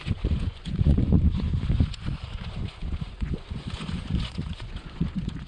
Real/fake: fake